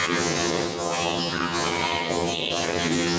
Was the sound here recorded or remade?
remade